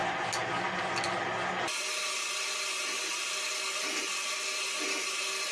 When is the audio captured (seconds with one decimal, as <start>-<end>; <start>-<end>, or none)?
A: 0.0-5.5